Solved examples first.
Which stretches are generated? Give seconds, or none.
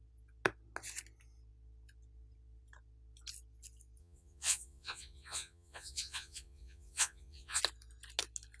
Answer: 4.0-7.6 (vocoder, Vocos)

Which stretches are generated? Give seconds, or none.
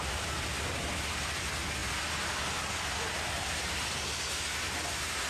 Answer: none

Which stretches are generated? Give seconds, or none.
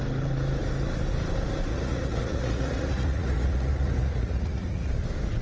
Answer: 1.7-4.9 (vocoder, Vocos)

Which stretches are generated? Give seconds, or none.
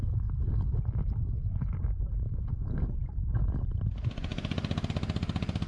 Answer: none